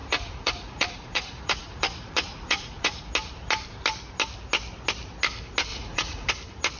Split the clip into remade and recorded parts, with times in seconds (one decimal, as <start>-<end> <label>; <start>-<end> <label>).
0.0-3.1 remade; 3.1-5.7 recorded; 5.7-6.3 remade; 6.3-6.8 recorded